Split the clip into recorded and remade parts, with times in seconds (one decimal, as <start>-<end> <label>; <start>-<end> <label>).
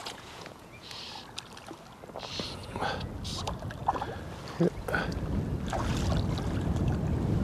0.0-1.0 remade; 1.0-2.6 recorded; 2.6-3.1 remade; 3.1-7.4 recorded